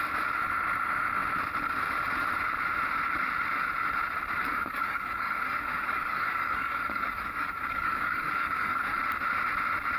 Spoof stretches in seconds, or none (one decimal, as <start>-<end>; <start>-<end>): 4.4-9.0